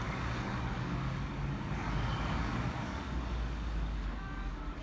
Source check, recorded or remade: remade